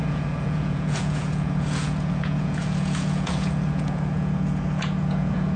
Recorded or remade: remade